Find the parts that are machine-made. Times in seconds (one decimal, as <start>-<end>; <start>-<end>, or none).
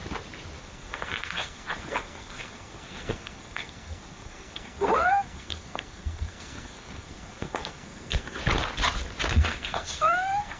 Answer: 0.6-8.4; 9.3-10.6